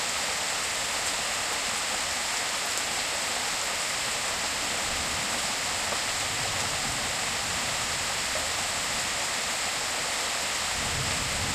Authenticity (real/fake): real